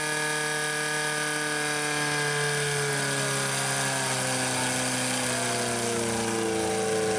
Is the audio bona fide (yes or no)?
yes